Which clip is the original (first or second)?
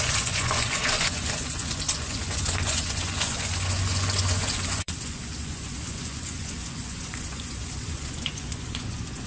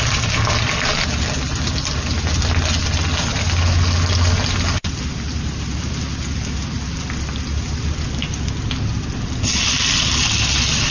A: second